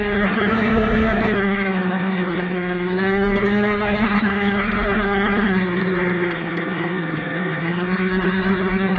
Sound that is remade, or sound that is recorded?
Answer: remade